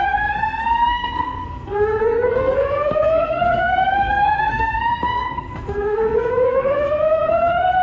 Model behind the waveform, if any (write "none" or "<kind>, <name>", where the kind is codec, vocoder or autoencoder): codec, SNAC